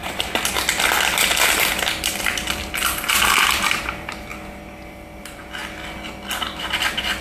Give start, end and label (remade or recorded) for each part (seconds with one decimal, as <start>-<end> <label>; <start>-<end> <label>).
0.0-4.3 remade; 4.3-4.9 recorded; 4.9-5.6 remade; 5.6-6.6 recorded; 6.6-7.2 remade